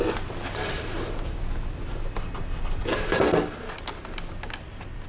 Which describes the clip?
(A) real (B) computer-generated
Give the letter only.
A